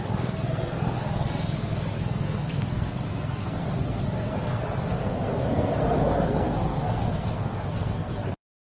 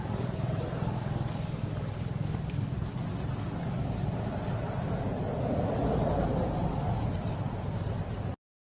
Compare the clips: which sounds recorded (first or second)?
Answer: second